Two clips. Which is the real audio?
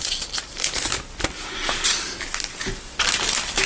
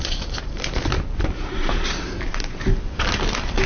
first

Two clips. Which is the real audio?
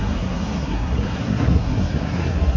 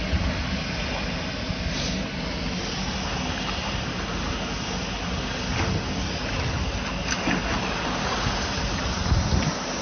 second